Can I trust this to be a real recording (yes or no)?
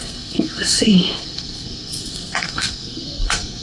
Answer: no